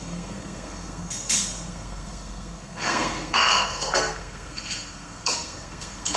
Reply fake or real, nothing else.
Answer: fake